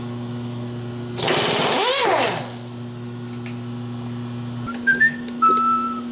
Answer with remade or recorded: recorded